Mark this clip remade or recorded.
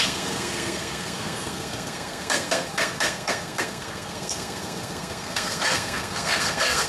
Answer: remade